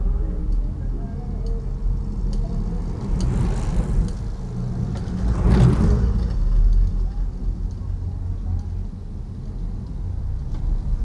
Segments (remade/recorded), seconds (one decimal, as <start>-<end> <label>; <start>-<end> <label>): 0.0-11.0 recorded